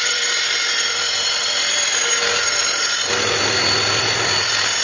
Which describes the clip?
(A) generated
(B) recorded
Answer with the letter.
B